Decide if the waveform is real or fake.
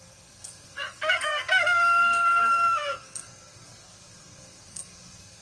fake